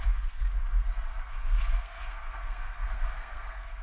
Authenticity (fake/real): fake